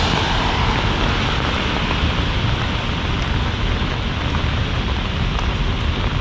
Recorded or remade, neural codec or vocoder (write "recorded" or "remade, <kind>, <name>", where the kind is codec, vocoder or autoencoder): recorded